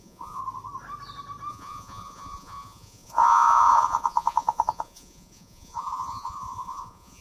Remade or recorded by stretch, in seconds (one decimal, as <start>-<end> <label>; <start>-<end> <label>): 0.0-0.4 remade; 0.4-1.5 recorded; 1.5-7.2 remade

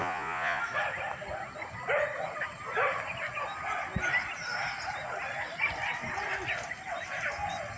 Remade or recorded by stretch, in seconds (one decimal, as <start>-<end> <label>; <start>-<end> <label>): 0.0-0.6 remade; 0.6-7.8 recorded